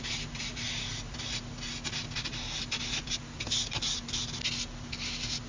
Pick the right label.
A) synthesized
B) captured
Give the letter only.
B